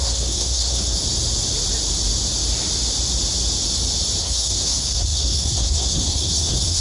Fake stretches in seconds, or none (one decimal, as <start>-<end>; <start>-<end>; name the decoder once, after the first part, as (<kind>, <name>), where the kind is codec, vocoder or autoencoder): 0.0-1.0 (codec, SNAC); 4.2-6.8